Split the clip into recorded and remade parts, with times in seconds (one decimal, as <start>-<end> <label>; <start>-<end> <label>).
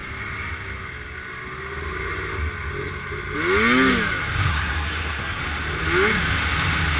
0.0-4.5 recorded; 4.5-5.4 remade; 5.4-7.0 recorded